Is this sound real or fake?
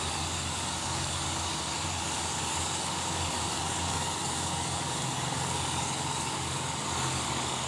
fake